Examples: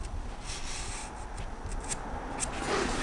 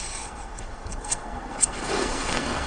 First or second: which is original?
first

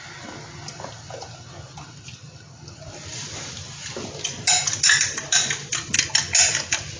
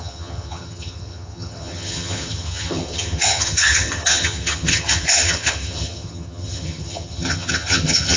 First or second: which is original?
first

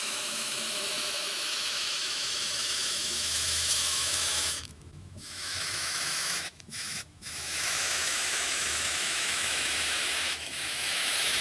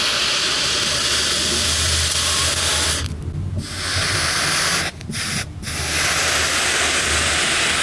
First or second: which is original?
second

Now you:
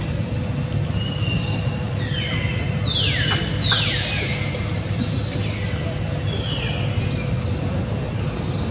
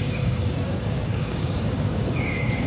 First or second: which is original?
first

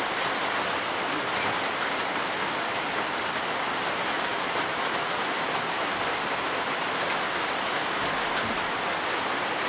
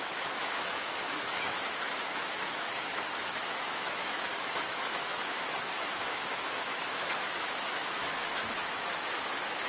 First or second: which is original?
first